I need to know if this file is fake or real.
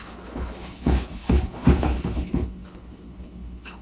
fake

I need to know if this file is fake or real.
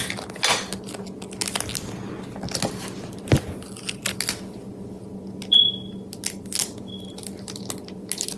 real